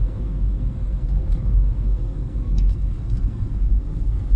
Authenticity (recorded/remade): remade